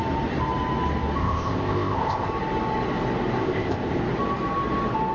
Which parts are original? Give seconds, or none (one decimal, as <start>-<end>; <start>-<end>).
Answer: 0.0-1.2; 2.3-3.4; 4.0-5.1